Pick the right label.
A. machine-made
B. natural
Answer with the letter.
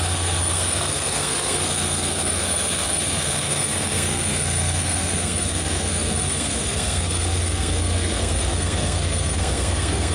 A